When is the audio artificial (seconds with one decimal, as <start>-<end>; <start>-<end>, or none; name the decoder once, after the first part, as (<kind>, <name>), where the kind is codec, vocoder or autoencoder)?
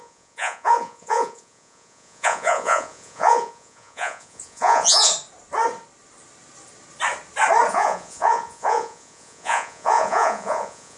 0.0-5.1 (vocoder, Vocos); 7.7-11.0